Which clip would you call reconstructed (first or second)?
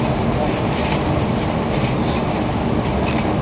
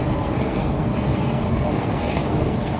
second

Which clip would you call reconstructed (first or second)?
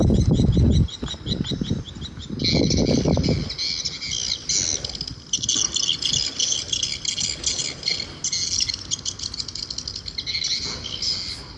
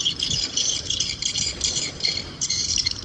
second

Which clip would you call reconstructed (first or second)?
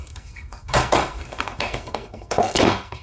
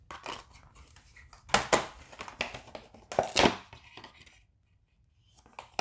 first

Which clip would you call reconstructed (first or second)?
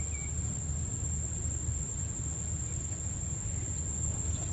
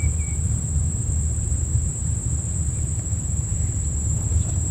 second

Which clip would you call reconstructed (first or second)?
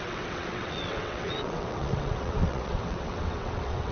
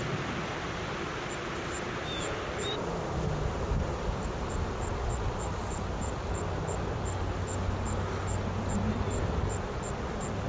first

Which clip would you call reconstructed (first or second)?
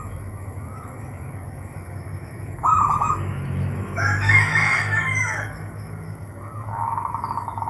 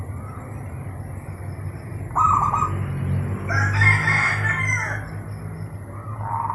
first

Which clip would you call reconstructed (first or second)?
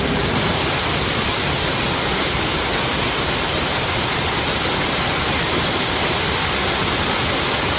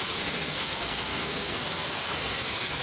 second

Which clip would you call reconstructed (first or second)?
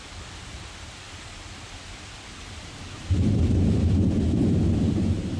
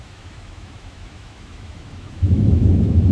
second